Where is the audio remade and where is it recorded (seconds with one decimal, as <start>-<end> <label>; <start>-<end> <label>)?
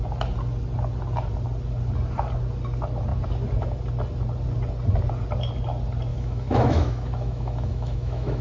0.0-6.1 recorded; 6.1-8.4 remade